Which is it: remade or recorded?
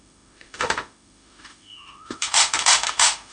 remade